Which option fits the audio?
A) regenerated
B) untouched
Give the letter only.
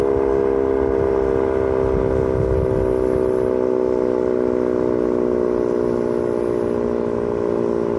B